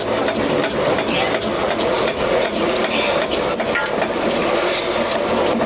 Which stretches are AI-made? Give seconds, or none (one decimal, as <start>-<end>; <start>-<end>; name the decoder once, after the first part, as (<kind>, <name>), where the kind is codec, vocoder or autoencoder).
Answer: 1.5-2.8 (vocoder, Vocos)

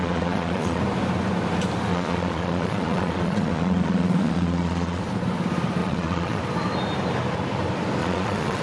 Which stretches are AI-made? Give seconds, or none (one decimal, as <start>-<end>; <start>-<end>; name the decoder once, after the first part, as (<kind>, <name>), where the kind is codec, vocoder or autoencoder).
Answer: 0.0-0.8 (vocoder, Vocos); 1.9-5.0; 5.8-6.4; 8.0-8.6